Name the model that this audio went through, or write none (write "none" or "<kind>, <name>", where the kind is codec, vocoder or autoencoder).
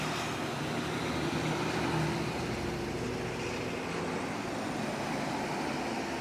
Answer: none